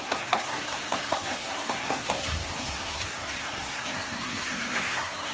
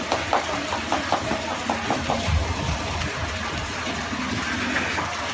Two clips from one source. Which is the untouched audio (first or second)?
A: second